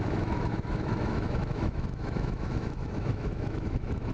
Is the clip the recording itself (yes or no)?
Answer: no